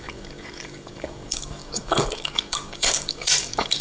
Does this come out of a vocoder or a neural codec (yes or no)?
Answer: yes